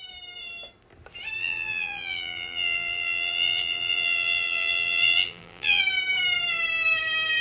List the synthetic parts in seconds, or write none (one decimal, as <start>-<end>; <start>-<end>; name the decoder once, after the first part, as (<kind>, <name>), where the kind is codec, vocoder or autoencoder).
1.4-5.8 (vocoder, BigVGAN v2)